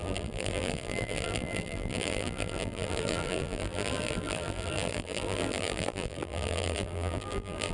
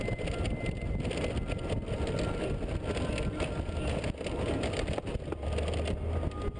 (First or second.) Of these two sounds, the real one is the second